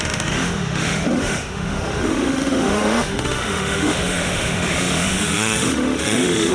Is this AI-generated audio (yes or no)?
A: yes